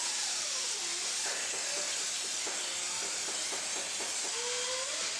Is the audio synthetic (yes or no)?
no